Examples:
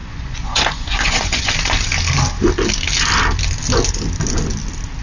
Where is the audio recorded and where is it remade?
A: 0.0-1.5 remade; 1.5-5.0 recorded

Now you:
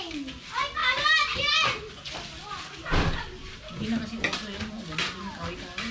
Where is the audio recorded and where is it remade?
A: 0.0-5.9 recorded